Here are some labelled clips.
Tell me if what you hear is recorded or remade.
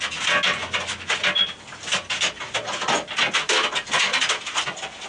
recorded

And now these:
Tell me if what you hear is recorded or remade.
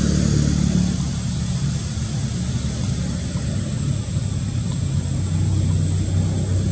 recorded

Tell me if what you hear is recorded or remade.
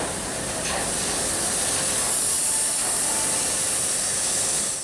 recorded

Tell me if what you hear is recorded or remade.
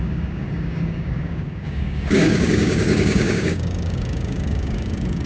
remade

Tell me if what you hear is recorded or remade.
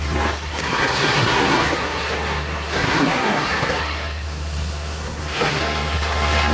remade